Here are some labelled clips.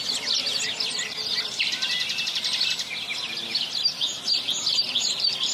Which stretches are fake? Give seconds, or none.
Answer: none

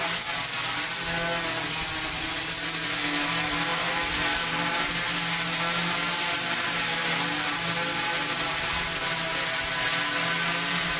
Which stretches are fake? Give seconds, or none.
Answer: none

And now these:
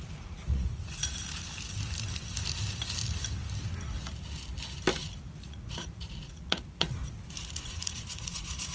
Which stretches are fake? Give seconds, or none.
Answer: 0.0-1.0 (vocoder, Vocos); 5.4-7.0; 7.5-8.7

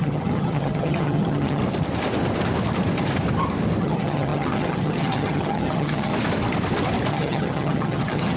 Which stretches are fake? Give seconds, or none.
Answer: 0.0-1.6 (vocoder, HiFi-GAN); 3.8-6.1; 7.1-8.4

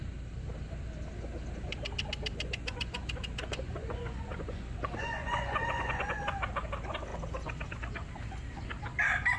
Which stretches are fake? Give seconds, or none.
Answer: 2.3-6.2 (vocoder, Vocos)

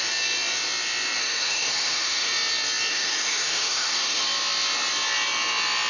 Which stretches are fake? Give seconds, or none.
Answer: 1.2-2.3 (autoencoder, DAC-VAE); 2.9-4.2

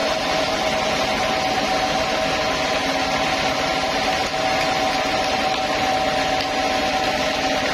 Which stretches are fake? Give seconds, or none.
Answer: none

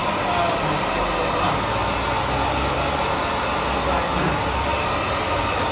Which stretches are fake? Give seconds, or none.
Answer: none